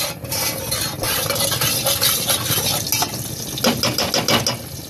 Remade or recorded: recorded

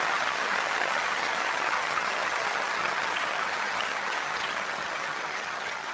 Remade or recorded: remade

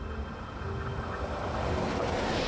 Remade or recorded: recorded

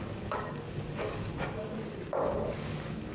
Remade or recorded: remade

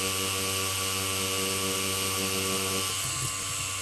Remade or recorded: recorded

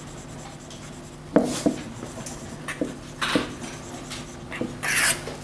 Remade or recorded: recorded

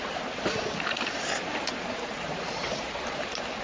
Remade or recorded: remade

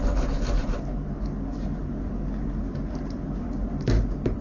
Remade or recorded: recorded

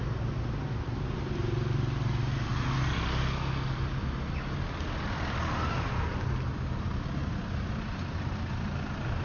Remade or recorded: recorded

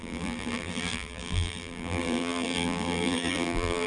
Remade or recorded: remade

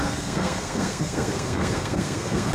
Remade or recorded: remade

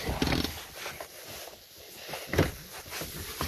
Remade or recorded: recorded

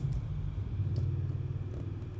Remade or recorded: recorded